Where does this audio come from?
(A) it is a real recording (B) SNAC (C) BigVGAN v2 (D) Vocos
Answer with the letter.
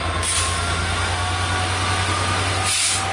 A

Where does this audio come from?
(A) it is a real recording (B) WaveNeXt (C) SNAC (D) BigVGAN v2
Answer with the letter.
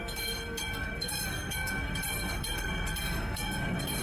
C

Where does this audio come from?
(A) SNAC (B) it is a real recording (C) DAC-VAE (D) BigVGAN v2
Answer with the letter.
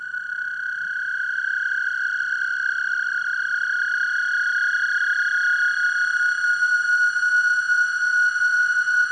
B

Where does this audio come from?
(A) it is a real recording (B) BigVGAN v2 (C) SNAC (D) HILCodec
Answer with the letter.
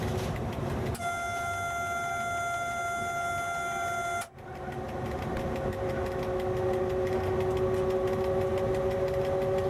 A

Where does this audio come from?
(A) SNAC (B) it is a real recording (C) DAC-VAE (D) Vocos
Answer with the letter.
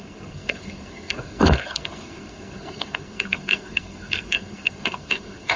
A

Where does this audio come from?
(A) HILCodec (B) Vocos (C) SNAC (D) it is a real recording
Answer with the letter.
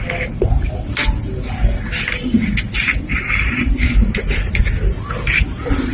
D